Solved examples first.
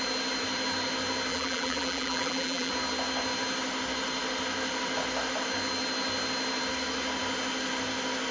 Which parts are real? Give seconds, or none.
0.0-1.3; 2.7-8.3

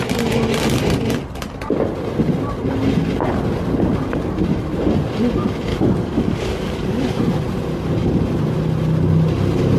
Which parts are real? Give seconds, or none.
0.0-5.7; 7.2-9.8

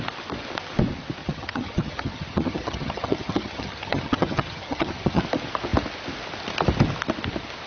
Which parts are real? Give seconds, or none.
0.0-1.2; 5.2-7.7

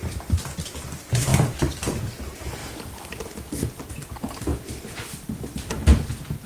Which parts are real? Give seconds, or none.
0.0-1.3; 2.0-4.5; 5.7-6.5

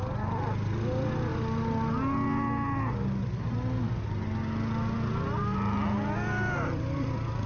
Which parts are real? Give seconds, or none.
0.0-7.5

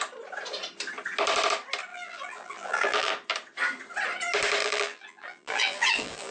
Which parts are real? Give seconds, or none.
0.0-1.9; 3.1-4.6

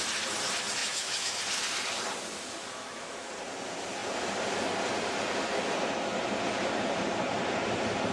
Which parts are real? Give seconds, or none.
0.0-0.8; 1.4-2.6; 3.3-8.1

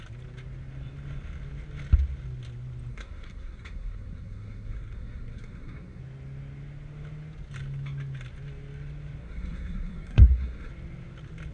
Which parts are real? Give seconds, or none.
0.0-2.9; 6.0-9.2; 10.7-11.5